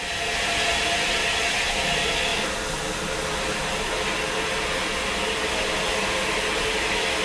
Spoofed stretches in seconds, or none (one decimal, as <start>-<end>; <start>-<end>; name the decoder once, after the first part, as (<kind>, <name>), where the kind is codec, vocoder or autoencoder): none